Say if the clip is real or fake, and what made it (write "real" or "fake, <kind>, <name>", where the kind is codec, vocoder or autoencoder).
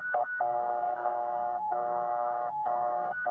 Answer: fake, codec, SNAC